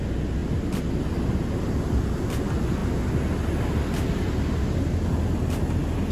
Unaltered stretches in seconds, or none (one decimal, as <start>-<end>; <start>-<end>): 0.0-6.1